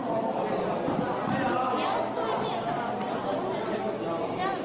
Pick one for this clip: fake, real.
real